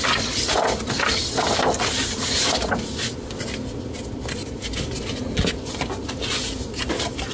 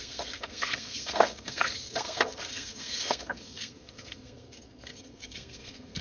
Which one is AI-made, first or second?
second